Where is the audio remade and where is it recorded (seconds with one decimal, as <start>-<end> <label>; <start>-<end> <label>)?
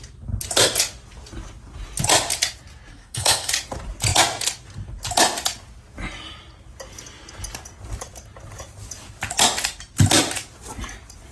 0.0-2.9 recorded; 2.9-3.5 remade; 3.5-11.3 recorded